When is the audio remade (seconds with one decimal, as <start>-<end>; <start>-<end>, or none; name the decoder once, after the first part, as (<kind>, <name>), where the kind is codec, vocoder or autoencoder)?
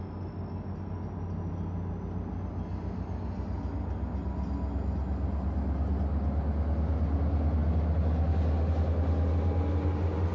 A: none